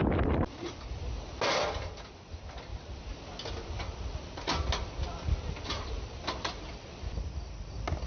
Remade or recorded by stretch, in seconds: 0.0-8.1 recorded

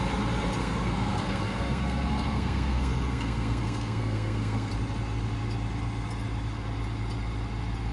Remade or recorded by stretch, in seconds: 0.0-0.6 recorded; 0.6-4.7 remade; 4.7-7.9 recorded

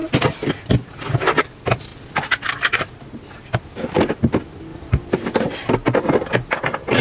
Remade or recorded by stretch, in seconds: 0.0-7.0 recorded

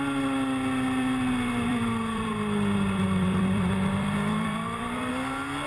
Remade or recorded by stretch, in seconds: 0.0-1.7 recorded; 1.7-5.1 remade; 5.1-5.7 recorded

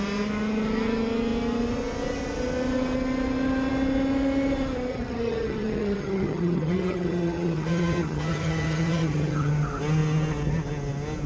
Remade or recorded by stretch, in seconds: 0.0-4.9 recorded; 4.9-9.5 remade; 9.5-11.3 recorded

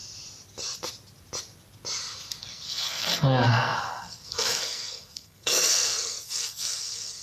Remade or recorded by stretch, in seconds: 0.0-2.4 recorded; 2.4-7.2 remade